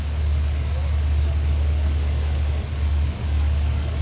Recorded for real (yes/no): no